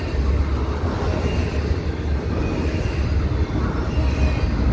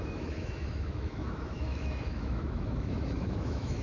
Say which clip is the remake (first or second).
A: second